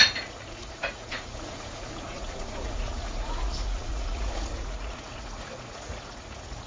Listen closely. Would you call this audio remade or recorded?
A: remade